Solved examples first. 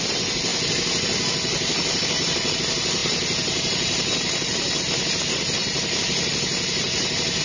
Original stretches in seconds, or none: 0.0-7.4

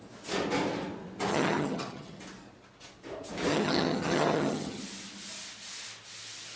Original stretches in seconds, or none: 0.0-1.3; 2.2-3.5; 4.8-6.6

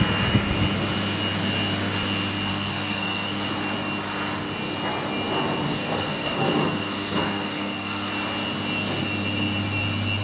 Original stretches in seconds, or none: 0.0-2.5; 3.5-5.8; 8.1-10.2

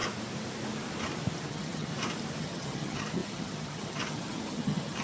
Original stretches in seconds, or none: 0.0-1.5; 1.9-2.4

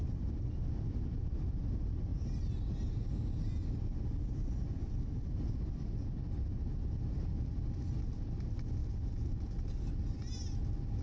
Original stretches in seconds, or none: 0.0-8.8; 9.3-11.0

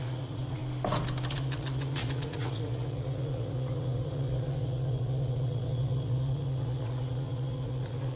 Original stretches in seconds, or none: 0.6-1.3

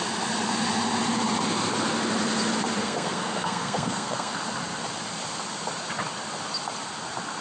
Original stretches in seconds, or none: 0.0-2.8; 4.4-7.4

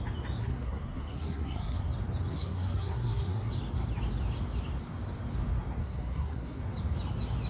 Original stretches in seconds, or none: 0.0-0.4; 1.9-2.3; 3.5-5.8; 6.6-7.5